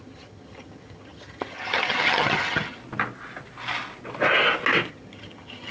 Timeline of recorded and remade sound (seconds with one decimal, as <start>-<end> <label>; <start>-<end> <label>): 0.0-2.8 remade; 2.8-4.9 recorded; 4.9-5.7 remade